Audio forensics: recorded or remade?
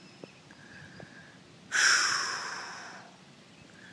recorded